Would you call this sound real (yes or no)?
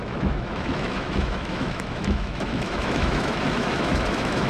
no